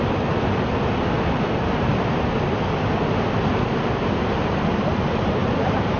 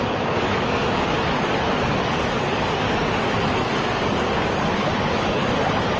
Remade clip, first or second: second